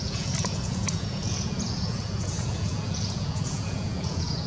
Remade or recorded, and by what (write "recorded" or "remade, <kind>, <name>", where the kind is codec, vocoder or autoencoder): remade, vocoder, Vocos